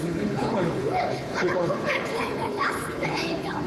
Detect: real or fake fake